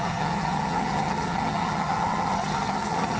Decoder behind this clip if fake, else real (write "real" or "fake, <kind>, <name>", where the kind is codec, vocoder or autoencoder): fake, vocoder, HiFi-GAN